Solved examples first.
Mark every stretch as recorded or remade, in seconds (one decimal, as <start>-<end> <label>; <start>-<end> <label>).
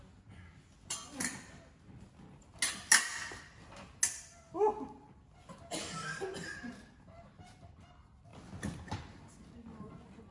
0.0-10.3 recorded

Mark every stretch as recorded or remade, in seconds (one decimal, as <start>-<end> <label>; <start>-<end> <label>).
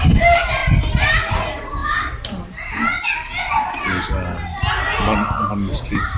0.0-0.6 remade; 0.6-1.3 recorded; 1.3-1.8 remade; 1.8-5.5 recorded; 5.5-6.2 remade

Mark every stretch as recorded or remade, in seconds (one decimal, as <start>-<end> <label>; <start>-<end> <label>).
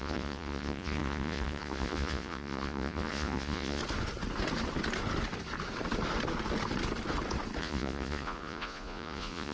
0.0-3.8 remade; 3.8-7.6 recorded; 7.6-9.5 remade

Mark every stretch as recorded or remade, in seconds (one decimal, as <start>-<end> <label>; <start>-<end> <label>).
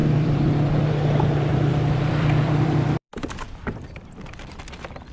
0.0-0.9 remade; 0.9-1.5 recorded; 1.5-4.6 remade; 4.6-5.1 recorded